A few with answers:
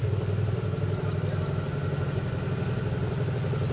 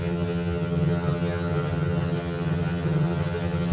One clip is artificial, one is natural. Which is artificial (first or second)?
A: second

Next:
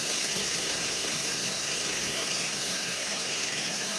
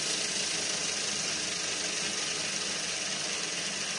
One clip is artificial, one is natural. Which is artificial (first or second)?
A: first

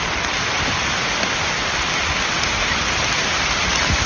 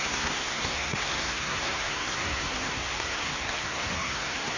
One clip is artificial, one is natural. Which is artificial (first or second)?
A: second